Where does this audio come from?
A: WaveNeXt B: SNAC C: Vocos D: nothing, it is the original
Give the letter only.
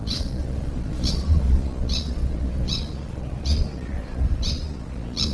C